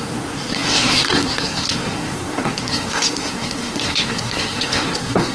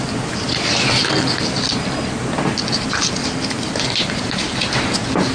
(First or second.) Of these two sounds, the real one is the second